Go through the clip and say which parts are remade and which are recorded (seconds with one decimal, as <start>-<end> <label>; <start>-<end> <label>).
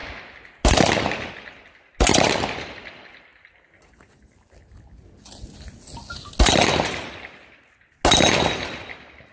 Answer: 0.0-9.3 recorded